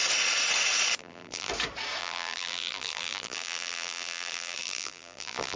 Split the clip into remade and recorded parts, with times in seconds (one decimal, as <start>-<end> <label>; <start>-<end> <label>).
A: 0.0-1.0 recorded; 1.0-1.5 remade; 1.5-2.0 recorded; 2.0-5.6 remade

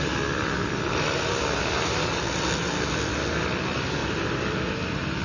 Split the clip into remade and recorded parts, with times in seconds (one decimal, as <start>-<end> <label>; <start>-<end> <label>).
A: 0.0-5.2 recorded

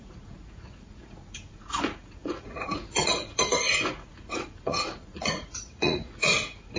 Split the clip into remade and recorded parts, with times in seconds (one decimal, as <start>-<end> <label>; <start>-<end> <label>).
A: 0.0-6.8 remade